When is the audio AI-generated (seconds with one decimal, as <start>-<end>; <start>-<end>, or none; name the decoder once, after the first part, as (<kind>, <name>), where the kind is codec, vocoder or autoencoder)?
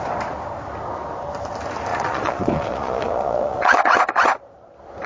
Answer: 1.9-4.4 (vocoder, Vocos)